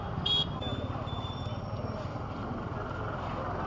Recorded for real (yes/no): no